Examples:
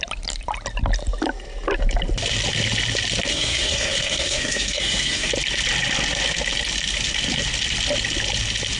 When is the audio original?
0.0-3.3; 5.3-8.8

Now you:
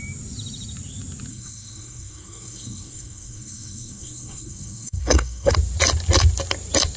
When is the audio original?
0.0-1.3; 5.5-7.0

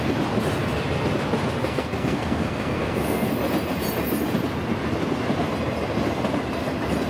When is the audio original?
0.0-1.6; 3.3-7.1

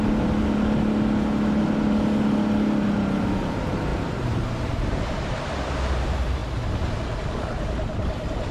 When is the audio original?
0.0-8.5

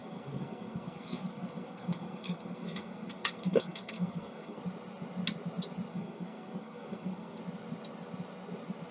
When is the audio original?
4.6-5.9; 7.4-8.9

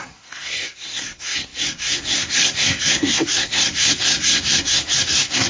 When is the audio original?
none

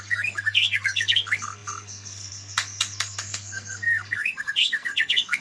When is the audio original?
none